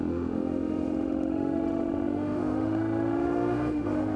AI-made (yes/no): yes